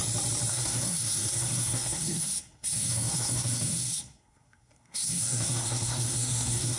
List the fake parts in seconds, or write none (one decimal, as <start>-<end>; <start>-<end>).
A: 0.5-6.8